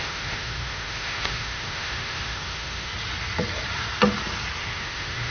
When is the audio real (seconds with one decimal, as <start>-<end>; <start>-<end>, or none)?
2.9-4.6